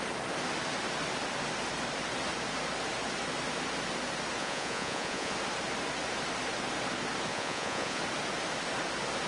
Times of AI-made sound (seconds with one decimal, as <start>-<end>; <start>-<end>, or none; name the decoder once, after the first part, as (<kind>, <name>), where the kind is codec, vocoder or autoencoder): 4.4-5.3 (vocoder, Vocos); 7.3-8.0